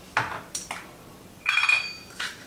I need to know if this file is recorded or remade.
remade